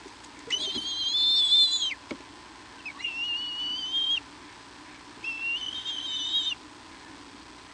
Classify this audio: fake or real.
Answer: real